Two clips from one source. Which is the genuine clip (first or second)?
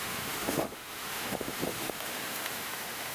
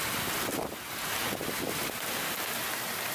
second